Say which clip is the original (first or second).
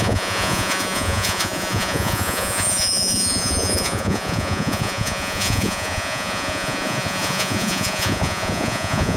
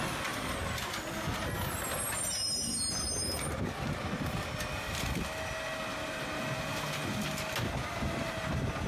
second